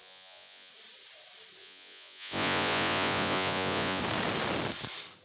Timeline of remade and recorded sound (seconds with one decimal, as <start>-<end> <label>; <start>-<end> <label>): 0.0-0.7 remade; 0.7-1.6 recorded; 1.6-4.0 remade; 4.0-5.2 recorded